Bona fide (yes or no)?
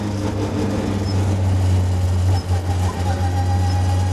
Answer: yes